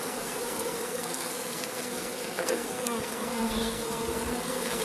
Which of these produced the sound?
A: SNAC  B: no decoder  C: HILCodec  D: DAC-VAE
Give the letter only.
A